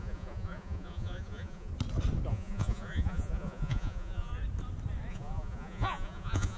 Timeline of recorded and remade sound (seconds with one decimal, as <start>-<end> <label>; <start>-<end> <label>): 0.0-1.7 remade; 1.7-2.3 recorded; 2.3-4.3 remade; 4.3-5.1 recorded; 5.1-6.6 remade